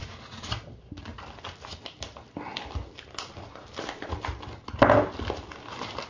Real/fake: real